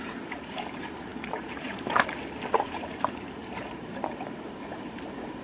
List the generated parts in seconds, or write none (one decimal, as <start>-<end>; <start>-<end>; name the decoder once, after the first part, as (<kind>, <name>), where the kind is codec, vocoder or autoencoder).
0.0-5.4 (vocoder, BigVGAN v2)

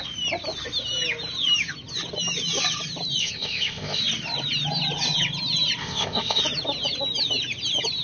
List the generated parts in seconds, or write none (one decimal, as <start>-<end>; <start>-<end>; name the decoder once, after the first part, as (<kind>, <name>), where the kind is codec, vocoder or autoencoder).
3.2-4.0 (codec, ZipCodec); 5.8-6.4

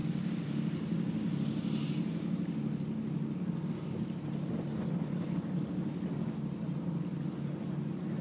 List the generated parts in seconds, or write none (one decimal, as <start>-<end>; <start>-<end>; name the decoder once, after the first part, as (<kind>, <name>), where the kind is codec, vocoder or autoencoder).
none

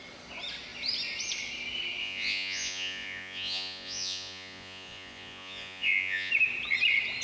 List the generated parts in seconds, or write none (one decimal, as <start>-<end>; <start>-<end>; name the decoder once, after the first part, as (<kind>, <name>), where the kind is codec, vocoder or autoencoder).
2.0-6.3 (vocoder, Vocos)

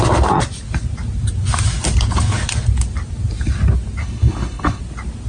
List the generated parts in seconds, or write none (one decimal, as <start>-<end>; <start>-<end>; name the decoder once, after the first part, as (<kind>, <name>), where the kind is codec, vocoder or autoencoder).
4.0-4.8 (codec, HILCodec)

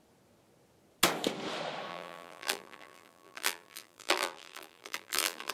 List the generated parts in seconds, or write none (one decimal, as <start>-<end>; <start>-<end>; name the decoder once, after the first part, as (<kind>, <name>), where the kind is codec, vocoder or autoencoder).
1.9-5.5 (vocoder, BigVGAN v2)